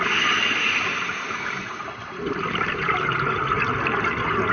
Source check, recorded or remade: recorded